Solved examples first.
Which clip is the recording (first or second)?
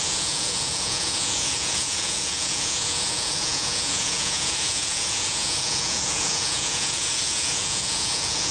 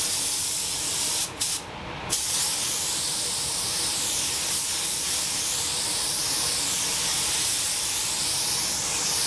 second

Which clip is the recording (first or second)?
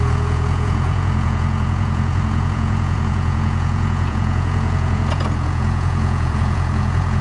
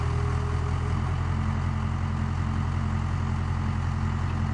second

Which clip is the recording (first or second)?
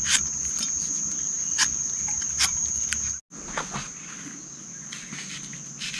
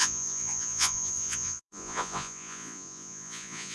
first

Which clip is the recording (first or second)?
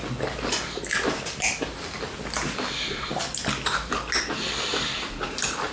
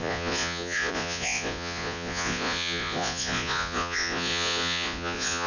first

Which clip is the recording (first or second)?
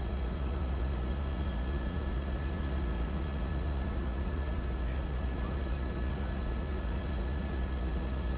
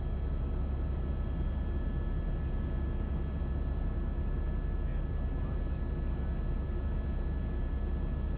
second